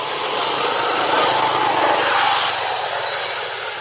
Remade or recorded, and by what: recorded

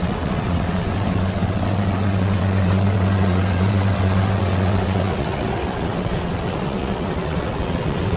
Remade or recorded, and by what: remade, vocoder, WaveNeXt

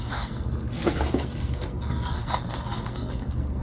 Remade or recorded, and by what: remade, codec, SNAC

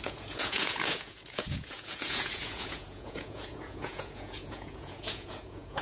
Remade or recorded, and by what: remade, vocoder, Vocos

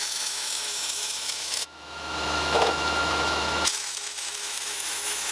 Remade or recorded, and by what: remade, autoencoder, DAC-VAE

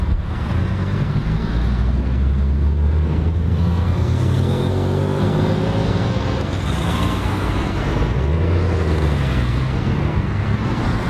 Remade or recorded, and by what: remade, codec, SNAC